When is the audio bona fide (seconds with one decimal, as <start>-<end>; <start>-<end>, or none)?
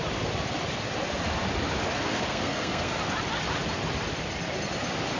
0.0-2.0; 2.9-5.2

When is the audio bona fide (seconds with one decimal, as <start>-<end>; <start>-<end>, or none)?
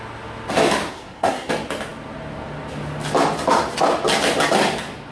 0.0-0.9; 1.5-5.1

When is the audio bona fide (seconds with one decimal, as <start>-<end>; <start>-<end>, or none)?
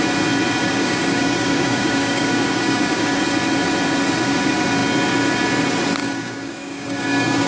0.0-0.6; 3.2-6.0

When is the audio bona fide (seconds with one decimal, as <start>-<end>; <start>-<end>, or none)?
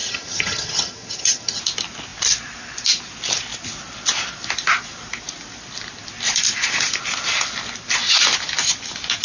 1.6-9.2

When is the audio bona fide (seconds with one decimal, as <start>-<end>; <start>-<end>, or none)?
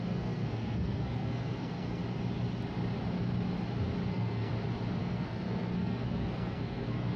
2.0-4.1; 4.5-5.0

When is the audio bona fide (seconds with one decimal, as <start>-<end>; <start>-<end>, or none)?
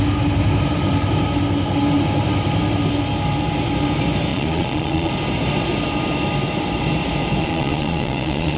0.0-4.3; 5.1-7.4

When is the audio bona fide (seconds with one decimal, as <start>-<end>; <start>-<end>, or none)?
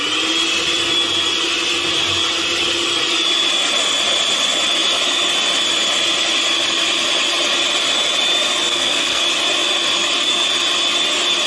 0.0-8.7; 9.2-11.5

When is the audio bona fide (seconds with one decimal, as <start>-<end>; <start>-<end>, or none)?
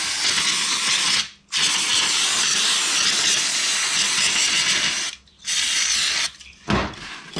0.0-7.4